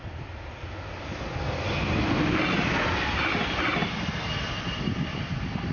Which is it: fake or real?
real